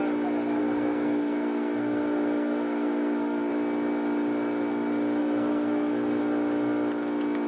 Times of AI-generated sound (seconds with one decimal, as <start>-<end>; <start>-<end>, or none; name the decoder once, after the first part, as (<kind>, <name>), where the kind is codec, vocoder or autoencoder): 0.6-3.5 (codec, SNAC); 5.2-6.2